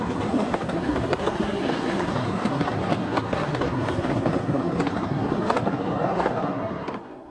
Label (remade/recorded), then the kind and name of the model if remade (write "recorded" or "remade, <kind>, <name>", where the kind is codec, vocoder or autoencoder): remade, codec, SNAC